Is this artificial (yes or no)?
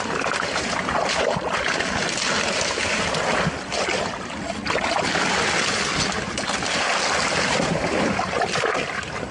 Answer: no